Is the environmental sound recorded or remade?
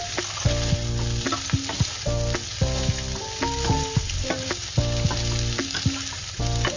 recorded